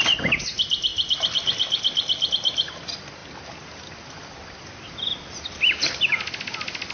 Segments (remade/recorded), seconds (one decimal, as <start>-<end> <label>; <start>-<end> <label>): 0.0-6.9 recorded